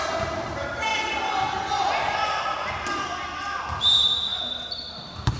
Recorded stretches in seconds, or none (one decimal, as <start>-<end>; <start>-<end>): 0.0-5.4